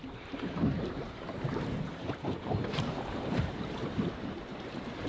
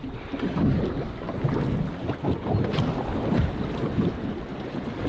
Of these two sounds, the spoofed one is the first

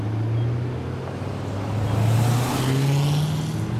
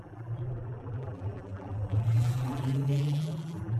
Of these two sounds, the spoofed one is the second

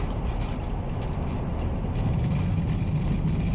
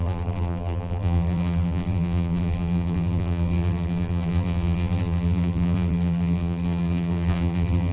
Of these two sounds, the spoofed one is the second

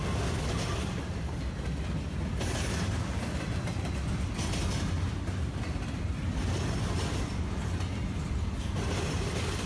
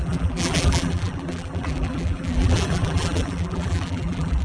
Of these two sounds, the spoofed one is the second